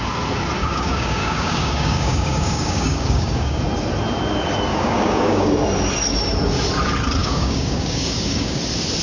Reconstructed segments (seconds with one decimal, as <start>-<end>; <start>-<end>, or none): 0.6-3.6; 4.7-5.5; 7.2-8.6